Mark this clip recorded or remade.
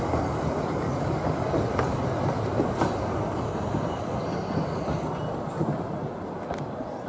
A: recorded